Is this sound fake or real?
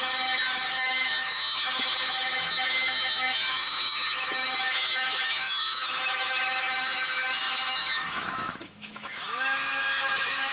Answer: fake